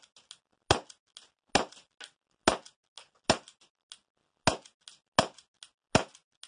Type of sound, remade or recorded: recorded